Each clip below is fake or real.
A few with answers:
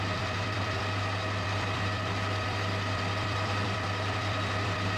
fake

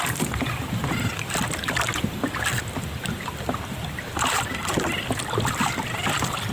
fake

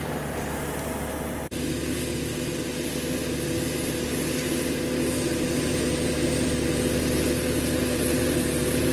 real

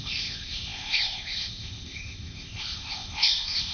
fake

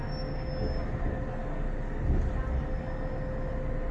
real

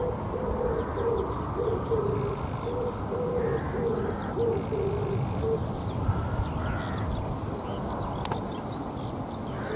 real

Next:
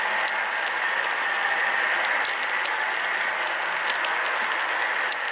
real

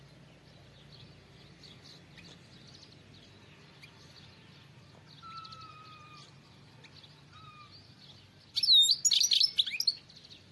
real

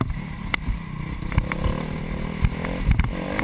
real